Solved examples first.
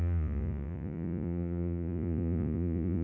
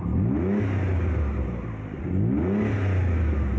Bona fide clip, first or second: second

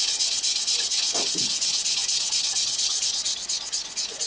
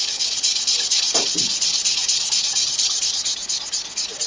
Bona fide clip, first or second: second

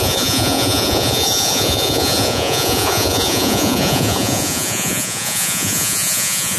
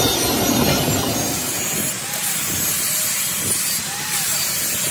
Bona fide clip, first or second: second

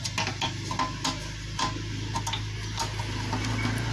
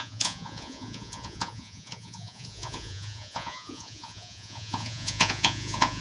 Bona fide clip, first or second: first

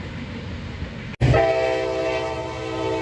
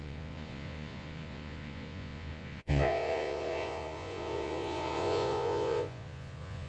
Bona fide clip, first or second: first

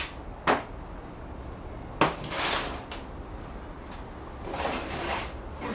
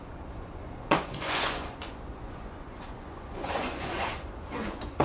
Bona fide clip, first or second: first